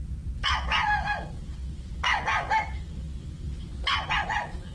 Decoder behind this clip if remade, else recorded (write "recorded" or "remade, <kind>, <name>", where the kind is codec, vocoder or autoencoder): recorded